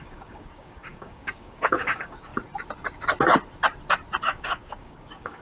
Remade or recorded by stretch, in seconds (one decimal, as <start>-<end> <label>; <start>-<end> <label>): 0.0-2.3 remade; 2.3-4.2 recorded; 4.2-5.4 remade